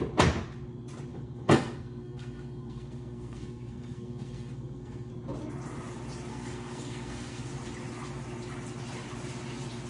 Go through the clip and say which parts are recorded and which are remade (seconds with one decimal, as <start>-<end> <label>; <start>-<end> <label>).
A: 0.0-1.1 recorded; 1.1-5.1 remade; 5.1-6.3 recorded; 6.3-7.5 remade; 7.5-9.9 recorded

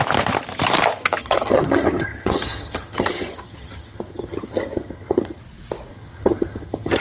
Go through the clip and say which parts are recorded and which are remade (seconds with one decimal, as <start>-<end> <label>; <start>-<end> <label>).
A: 0.0-1.2 recorded; 1.2-5.4 remade; 5.4-5.9 recorded; 5.9-7.0 remade

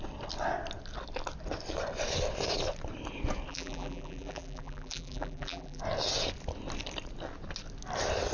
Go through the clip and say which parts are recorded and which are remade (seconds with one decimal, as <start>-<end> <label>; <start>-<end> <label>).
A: 0.0-3.5 recorded; 3.5-5.8 remade; 5.8-8.3 recorded